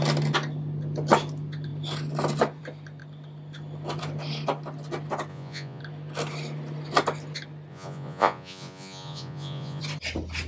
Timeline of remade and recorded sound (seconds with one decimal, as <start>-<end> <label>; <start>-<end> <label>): 0.0-5.3 recorded; 5.3-5.8 remade; 5.8-7.7 recorded; 7.7-9.8 remade; 9.8-10.5 recorded